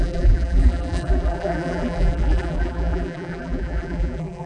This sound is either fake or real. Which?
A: fake